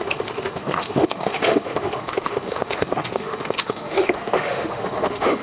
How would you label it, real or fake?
fake